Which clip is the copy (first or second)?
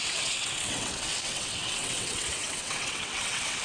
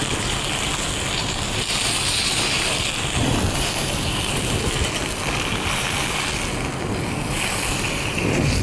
first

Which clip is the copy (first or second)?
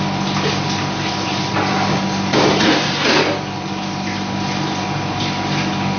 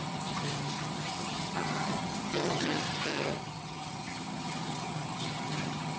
second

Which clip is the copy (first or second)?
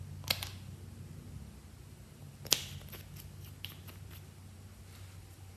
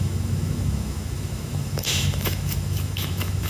second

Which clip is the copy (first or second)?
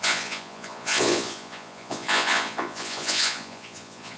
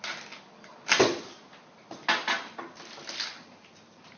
first